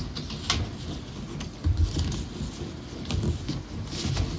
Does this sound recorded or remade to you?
recorded